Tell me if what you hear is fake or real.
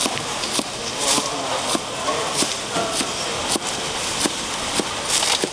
real